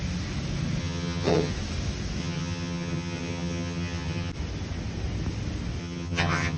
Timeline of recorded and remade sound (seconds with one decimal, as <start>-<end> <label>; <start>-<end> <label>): 0.0-0.8 recorded; 0.8-1.5 remade; 1.5-2.2 recorded; 2.2-4.3 remade; 4.3-5.8 recorded; 5.8-6.6 remade